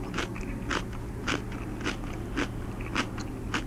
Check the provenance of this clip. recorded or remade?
recorded